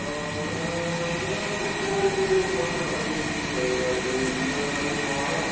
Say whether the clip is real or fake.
real